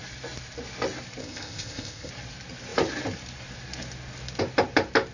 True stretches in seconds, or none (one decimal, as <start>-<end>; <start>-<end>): 0.0-1.2; 2.1-5.1